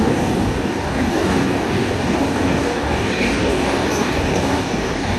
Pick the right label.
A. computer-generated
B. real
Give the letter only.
A